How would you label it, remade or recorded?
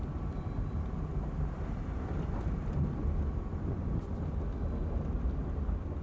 recorded